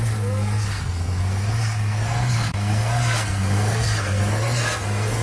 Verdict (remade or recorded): remade